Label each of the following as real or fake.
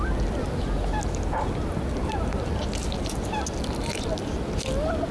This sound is real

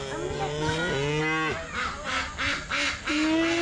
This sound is real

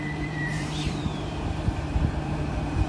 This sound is fake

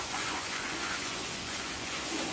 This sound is fake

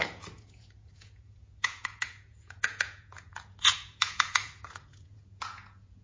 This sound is fake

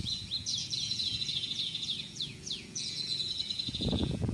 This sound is fake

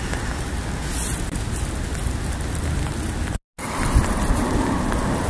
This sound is real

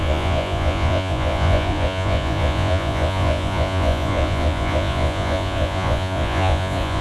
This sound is fake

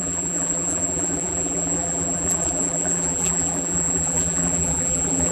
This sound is fake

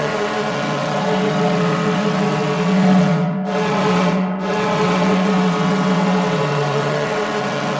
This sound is fake